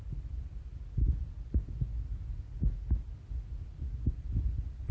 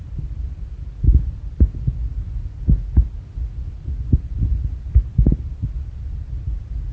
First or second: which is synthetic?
second